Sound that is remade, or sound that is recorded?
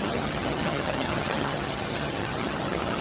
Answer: remade